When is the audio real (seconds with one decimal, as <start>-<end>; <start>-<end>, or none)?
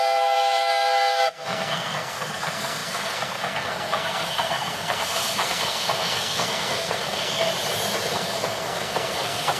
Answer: 7.5-8.1